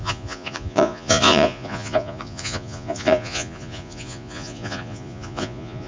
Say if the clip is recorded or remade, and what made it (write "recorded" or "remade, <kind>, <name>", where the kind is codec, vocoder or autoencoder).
remade, vocoder, Vocos